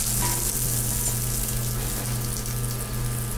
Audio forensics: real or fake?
real